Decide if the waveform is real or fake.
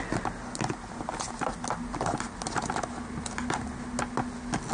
real